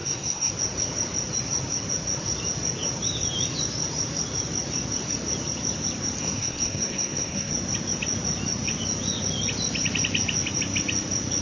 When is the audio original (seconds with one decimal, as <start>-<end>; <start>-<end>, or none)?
0.5-6.2; 7.5-11.4